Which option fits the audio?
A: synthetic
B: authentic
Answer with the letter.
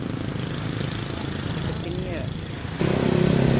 B